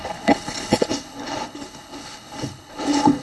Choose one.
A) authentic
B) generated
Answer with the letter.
B